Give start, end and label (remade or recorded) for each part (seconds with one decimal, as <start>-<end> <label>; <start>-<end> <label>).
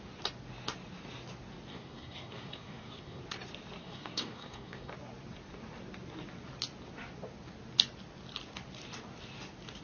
0.0-1.7 recorded; 1.7-3.2 remade; 3.2-3.8 recorded; 3.8-4.9 remade; 4.9-9.8 recorded